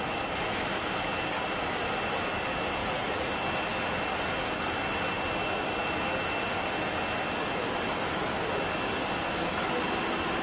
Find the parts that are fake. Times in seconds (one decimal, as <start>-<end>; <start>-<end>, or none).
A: 2.8-3.3